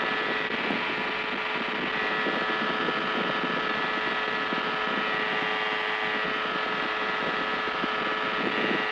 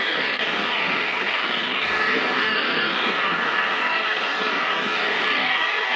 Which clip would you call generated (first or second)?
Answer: second